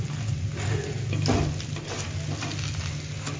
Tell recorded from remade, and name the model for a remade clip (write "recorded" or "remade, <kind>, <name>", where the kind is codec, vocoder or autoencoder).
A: recorded